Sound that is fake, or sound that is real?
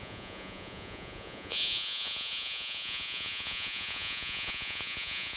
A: fake